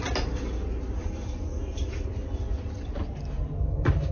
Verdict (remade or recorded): recorded